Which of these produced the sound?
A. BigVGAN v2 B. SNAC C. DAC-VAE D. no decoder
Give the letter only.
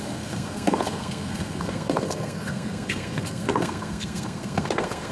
B